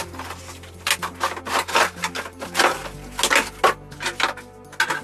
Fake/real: real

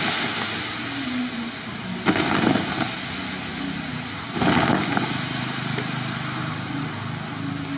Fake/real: real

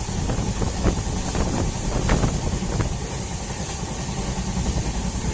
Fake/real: real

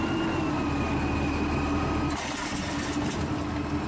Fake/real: real